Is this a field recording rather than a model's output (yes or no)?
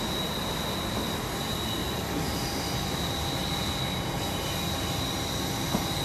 yes